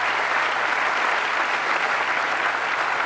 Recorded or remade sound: recorded